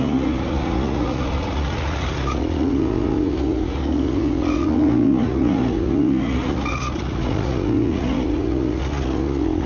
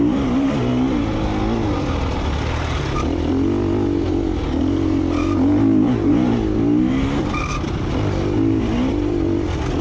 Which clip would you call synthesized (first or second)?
first